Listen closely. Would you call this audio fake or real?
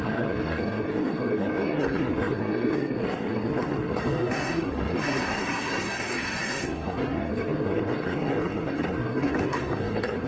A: fake